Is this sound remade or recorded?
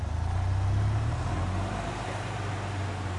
recorded